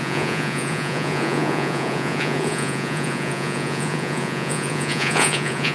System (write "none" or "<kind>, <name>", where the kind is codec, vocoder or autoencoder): vocoder, Vocos